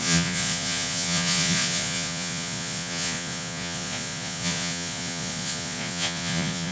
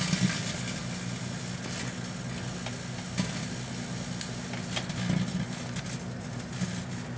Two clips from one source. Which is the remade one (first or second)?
first